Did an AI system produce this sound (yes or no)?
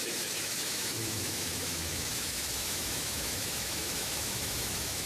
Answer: yes